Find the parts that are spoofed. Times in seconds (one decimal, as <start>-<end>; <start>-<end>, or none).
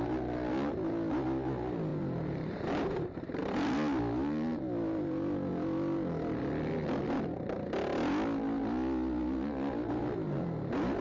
none